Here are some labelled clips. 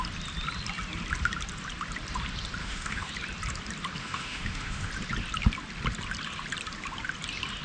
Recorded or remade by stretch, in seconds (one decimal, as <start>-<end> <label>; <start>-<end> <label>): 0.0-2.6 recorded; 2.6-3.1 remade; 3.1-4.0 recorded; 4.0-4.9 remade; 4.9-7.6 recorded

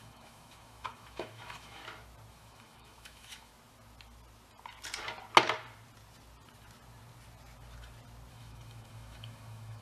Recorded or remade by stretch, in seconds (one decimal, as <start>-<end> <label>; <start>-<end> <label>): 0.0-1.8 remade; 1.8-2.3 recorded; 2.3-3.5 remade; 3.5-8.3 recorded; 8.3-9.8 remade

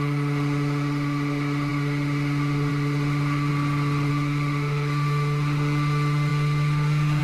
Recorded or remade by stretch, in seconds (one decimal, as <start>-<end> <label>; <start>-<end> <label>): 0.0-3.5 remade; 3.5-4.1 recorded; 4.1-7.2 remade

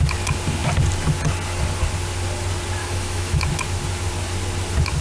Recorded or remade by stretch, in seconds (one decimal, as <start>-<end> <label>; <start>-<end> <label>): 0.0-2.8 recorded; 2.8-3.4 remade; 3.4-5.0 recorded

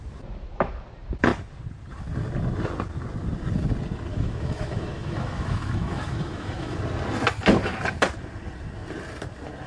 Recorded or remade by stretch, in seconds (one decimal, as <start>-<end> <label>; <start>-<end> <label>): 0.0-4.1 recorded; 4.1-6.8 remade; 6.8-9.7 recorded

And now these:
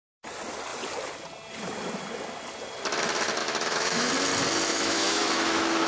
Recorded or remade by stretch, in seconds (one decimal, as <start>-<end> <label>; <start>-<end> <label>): 0.0-3.4 recorded; 3.4-4.1 remade; 4.1-4.7 recorded; 4.7-5.9 remade

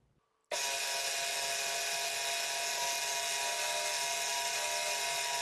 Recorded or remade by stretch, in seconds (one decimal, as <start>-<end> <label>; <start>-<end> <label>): 0.0-5.4 recorded